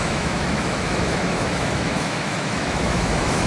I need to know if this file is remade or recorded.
remade